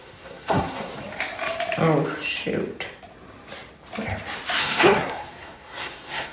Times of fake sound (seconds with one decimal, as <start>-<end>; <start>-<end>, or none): 0.0-0.9; 4.6-6.3